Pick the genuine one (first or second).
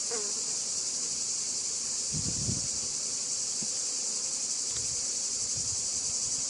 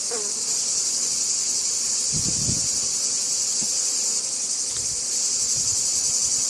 second